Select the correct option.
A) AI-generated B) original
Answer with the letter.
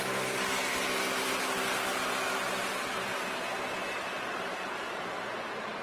B